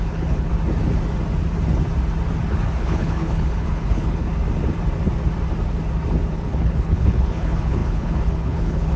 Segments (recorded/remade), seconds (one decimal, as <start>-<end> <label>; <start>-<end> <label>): 0.0-0.5 remade; 0.5-2.8 recorded; 2.8-4.3 remade; 4.3-6.3 recorded; 6.3-9.0 remade